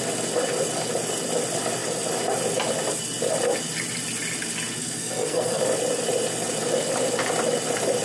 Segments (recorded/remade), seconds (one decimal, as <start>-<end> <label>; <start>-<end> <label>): 0.0-4.8 recorded; 4.8-5.6 remade; 5.6-8.0 recorded